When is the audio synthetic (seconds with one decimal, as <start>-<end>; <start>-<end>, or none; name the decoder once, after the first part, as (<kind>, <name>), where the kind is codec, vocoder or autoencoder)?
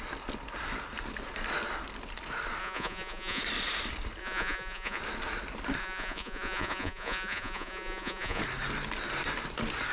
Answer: 2.6-3.4 (vocoder, Vocos); 4.2-5.0; 5.8-8.4